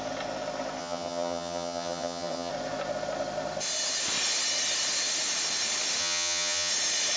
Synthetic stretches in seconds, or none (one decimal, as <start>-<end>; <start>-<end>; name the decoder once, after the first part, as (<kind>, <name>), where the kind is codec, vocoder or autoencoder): 0.8-2.5 (vocoder, HiFi-GAN); 6.0-6.7